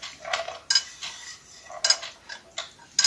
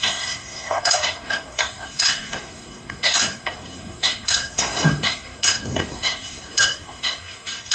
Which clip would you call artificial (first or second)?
second